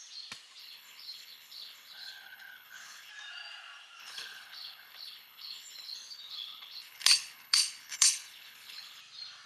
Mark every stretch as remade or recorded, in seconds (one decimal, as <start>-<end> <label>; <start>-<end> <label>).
0.0-0.6 recorded; 0.6-3.1 remade; 3.1-4.0 recorded; 4.0-9.0 remade; 9.0-9.5 recorded